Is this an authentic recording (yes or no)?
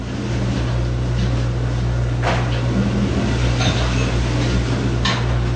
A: yes